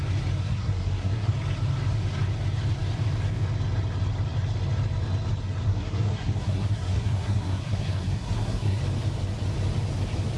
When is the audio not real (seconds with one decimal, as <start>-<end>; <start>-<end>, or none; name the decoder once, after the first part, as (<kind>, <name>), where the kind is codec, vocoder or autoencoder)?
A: 0.4-1.3 (codec, SNAC); 5.7-8.8